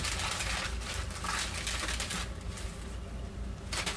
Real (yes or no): yes